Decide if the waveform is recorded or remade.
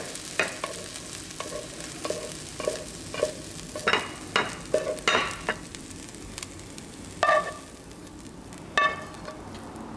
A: recorded